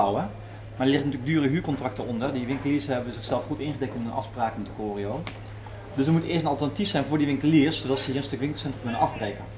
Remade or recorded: recorded